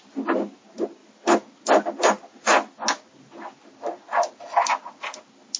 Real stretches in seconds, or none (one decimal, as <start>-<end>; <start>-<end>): 0.0-5.6